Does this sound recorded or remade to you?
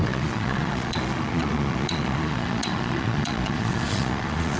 remade